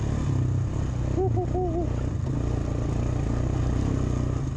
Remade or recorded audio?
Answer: recorded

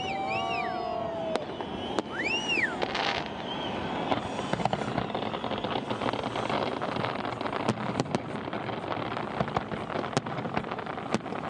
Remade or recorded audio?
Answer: recorded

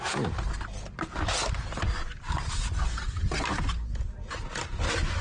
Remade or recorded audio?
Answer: recorded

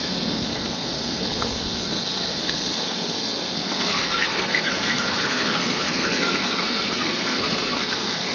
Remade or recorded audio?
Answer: remade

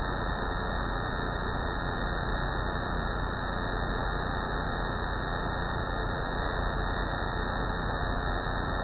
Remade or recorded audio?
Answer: recorded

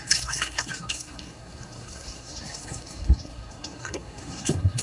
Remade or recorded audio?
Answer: remade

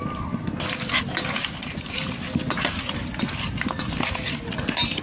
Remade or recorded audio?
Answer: recorded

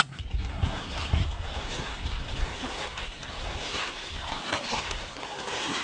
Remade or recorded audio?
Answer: remade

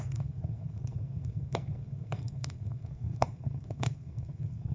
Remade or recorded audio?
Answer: remade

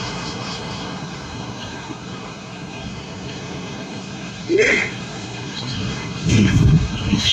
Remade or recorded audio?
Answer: remade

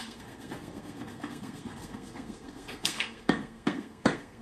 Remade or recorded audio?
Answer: remade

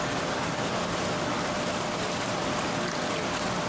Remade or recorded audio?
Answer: recorded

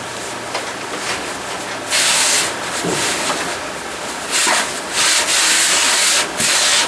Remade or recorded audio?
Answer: recorded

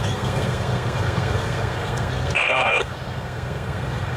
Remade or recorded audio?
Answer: remade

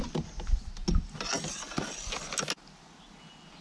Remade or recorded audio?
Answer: recorded